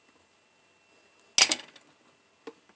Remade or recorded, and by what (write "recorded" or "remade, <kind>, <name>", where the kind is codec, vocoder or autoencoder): recorded